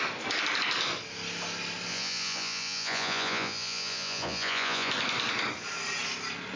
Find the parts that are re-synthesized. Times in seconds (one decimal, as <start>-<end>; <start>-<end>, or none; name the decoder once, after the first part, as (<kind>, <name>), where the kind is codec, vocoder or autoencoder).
1.9-4.9 (vocoder, Vocos)